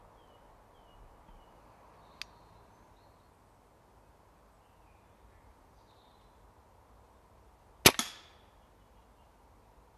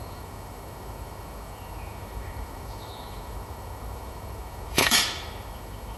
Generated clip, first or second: second